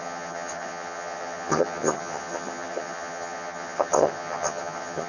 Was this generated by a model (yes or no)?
yes